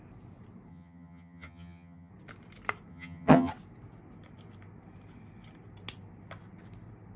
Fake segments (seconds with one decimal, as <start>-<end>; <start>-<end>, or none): 0.7-2.1; 2.9-3.5